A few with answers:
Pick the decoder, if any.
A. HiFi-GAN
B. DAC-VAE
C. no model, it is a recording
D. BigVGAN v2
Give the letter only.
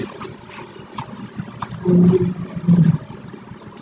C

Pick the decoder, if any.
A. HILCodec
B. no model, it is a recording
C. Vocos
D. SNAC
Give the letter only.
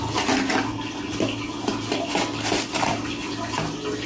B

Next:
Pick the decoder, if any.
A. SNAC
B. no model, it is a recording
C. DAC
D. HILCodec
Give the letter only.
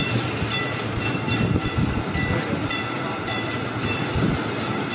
B